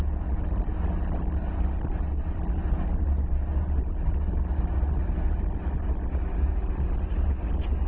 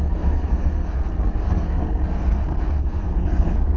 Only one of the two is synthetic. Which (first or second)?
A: second